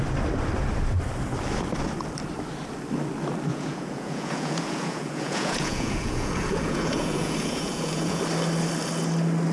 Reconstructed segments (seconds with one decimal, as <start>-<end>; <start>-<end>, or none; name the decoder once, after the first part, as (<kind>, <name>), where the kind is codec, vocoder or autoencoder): 3.5-8.2 (vocoder, Vocos)